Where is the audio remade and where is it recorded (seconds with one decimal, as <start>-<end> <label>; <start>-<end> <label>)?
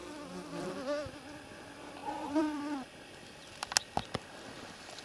0.0-2.0 recorded; 2.0-2.6 remade; 2.6-5.0 recorded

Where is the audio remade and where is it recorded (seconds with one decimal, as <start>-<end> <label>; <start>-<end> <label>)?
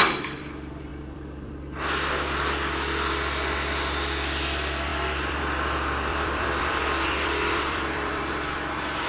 0.0-0.9 recorded; 0.9-2.1 remade; 2.1-4.9 recorded; 4.9-5.4 remade; 5.4-6.1 recorded; 6.1-8.3 remade; 8.3-9.1 recorded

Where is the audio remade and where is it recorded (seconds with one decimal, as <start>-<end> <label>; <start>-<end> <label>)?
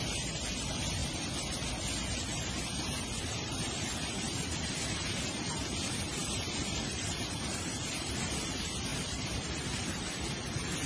0.0-1.0 recorded; 1.0-1.7 remade; 1.7-6.2 recorded; 6.2-8.3 remade; 8.3-8.9 recorded; 8.9-10.1 remade; 10.1-10.9 recorded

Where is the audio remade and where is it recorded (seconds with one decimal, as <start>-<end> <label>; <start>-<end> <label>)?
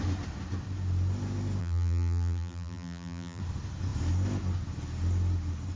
0.0-1.6 recorded; 1.6-3.4 remade; 3.4-5.8 recorded